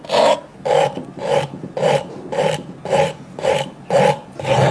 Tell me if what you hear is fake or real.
real